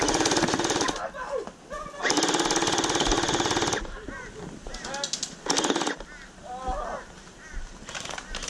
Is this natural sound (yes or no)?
yes